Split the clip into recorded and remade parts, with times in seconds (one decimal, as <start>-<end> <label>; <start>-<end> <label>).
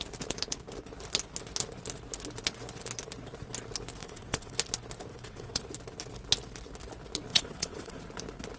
0.0-4.0 recorded; 4.0-4.5 remade; 4.5-5.1 recorded; 5.1-5.6 remade; 5.6-7.3 recorded; 7.3-8.0 remade; 8.0-8.6 recorded